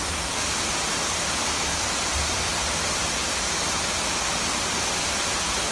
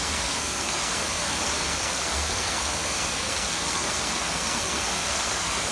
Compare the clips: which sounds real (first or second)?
first